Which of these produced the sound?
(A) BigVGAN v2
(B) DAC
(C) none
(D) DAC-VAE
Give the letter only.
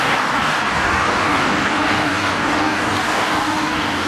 B